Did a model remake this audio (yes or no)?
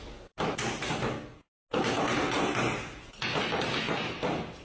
no